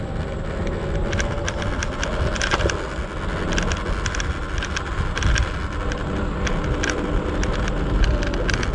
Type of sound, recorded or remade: recorded